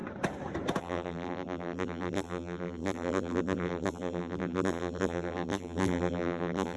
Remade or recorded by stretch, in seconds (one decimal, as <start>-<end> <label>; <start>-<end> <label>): 0.0-0.8 recorded; 0.8-6.8 remade